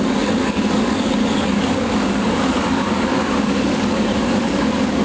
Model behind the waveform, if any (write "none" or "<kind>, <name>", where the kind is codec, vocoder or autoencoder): codec, DAC